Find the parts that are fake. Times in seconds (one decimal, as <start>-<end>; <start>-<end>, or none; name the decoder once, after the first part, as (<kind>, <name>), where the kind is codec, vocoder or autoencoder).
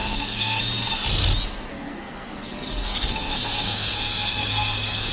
0.0-0.6 (codec, SNAC); 1.7-5.1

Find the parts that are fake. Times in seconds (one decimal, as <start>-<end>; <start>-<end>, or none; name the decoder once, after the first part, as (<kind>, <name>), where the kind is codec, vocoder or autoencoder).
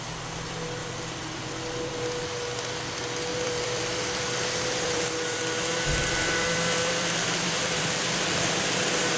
0.8-1.9 (vocoder, BigVGAN v2); 3.3-8.3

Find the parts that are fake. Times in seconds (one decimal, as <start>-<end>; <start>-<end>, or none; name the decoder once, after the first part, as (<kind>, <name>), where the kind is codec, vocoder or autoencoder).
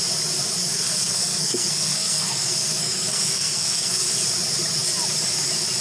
0.6-4.1 (codec, SNAC)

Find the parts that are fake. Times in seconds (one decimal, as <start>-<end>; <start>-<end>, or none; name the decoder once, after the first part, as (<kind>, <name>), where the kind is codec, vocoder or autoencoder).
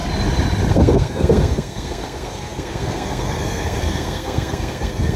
0.7-5.2 (codec, SNAC)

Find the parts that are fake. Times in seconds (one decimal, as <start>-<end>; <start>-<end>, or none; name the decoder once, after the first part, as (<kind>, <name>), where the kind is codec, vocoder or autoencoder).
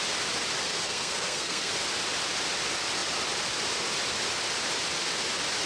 0.6-1.7 (codec, SNAC)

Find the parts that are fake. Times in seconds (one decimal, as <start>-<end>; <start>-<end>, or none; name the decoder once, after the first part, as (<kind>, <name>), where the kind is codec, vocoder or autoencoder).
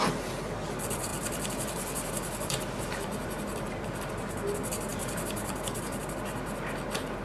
1.1-4.1 (vocoder, BigVGAN v2); 4.9-6.0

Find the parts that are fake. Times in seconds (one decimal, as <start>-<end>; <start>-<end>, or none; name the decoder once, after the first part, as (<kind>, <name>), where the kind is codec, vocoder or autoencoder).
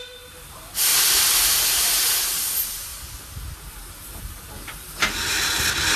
none